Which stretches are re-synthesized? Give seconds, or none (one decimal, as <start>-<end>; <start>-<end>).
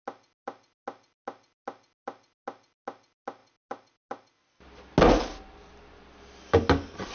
none